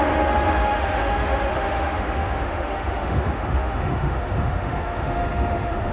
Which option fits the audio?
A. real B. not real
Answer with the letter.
B